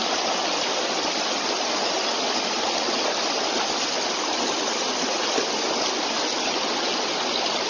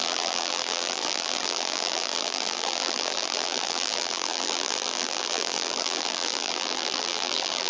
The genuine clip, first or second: first